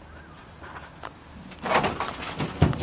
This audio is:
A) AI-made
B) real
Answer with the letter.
B